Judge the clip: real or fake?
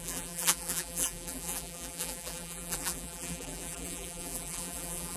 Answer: fake